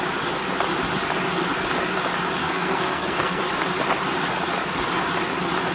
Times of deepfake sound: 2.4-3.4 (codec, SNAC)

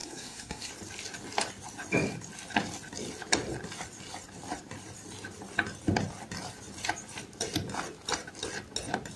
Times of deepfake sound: 0.0-0.7 (codec, SNAC)

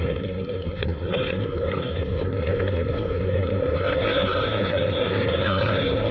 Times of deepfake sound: 0.0-6.1 (codec, SNAC)

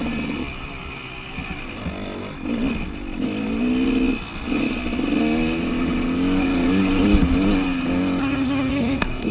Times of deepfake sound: 8.2-9.3 (codec, SNAC)

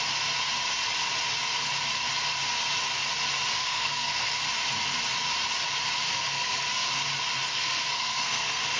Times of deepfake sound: 3.6-4.4 (codec, SNAC); 6.1-6.9; 7.5-8.8

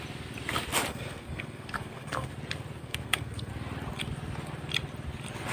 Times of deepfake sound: 0.9-2.3 (codec, SNAC); 2.8-3.5